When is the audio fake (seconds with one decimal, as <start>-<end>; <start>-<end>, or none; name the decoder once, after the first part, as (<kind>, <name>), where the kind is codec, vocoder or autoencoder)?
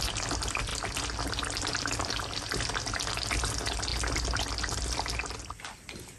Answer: none